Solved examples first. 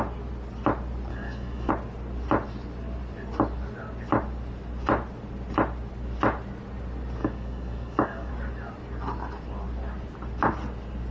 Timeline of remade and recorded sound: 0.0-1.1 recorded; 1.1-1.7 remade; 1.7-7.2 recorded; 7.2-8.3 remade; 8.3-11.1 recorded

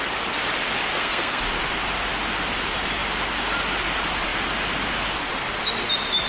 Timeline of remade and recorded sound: 0.0-0.9 recorded; 0.9-1.4 remade; 1.4-6.3 recorded

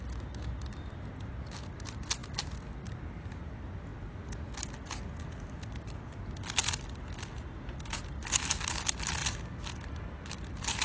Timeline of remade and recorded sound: 0.0-10.8 recorded

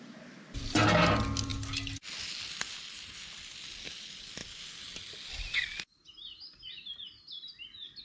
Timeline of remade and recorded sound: 0.0-8.0 recorded